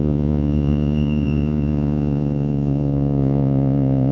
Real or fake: fake